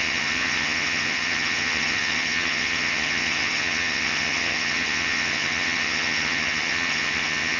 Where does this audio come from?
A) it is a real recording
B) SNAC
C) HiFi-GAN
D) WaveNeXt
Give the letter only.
C